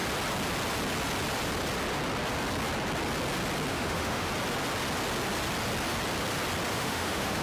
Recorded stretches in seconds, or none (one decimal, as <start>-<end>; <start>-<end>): 0.0-3.7; 4.3-6.7